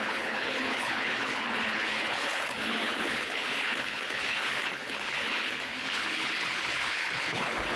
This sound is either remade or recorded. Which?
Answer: remade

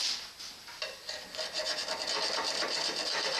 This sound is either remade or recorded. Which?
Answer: recorded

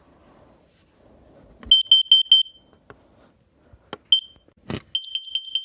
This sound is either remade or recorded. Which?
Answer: recorded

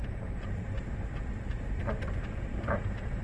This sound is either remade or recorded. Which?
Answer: remade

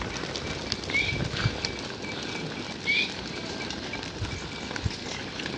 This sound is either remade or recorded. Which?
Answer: recorded